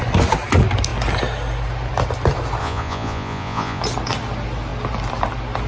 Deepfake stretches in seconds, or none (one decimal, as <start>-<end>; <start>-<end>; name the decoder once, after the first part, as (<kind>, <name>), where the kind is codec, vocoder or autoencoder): 2.6-3.8 (vocoder, Vocos)